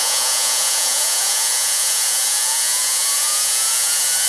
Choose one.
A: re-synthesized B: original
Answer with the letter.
A